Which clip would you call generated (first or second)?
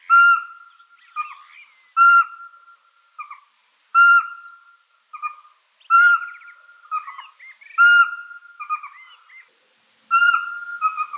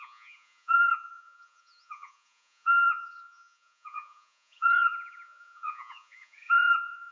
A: second